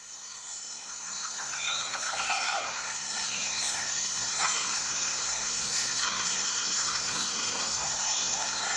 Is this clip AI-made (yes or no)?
yes